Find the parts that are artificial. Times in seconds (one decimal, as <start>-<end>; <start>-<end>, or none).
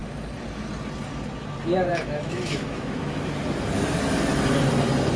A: 1.9-3.3